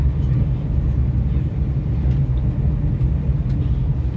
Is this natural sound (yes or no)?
yes